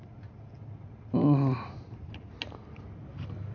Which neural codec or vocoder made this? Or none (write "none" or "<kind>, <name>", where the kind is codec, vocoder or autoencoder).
none